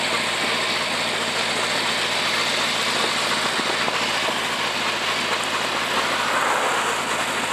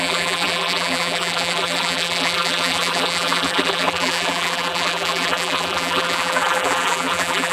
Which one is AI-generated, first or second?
second